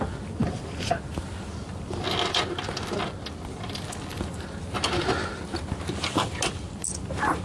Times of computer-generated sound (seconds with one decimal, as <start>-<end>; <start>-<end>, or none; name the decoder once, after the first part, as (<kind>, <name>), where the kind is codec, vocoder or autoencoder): none